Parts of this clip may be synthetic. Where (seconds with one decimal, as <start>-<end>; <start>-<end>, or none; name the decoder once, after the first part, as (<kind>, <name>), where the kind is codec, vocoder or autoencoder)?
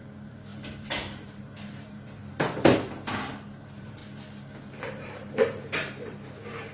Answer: 0.0-2.2 (vocoder, BigVGAN v2); 3.6-4.0; 4.7-6.7